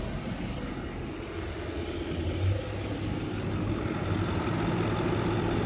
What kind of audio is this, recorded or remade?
recorded